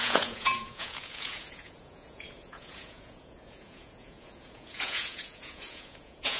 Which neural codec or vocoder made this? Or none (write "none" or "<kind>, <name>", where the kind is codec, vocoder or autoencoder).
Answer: vocoder, Vocos